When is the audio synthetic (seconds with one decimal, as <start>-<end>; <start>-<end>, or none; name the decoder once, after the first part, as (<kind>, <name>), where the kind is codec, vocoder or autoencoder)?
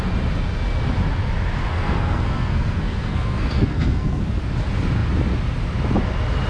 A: 1.7-4.2 (codec, SNAC)